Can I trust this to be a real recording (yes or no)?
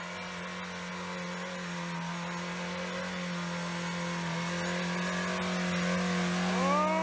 yes